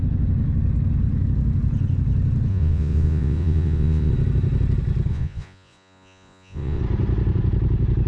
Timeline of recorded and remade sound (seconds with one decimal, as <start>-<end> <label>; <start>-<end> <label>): 0.0-2.5 recorded; 2.5-4.1 remade; 4.1-5.1 recorded; 5.1-6.8 remade; 6.8-8.1 recorded